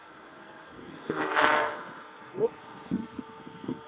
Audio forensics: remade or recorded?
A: remade